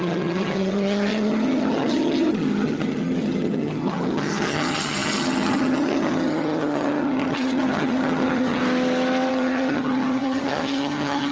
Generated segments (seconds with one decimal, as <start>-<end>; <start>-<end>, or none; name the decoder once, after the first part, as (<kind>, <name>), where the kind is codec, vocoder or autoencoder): 0.0-8.6 (vocoder, HiFi-GAN); 9.3-11.3